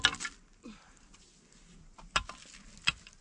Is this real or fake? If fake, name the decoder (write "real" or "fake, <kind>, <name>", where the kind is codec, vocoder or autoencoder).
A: real